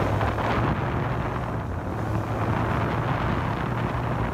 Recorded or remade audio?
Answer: recorded